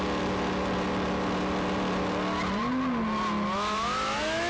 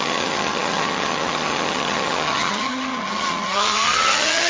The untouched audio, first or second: first